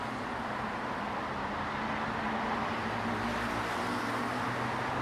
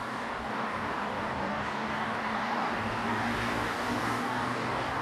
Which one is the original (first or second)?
first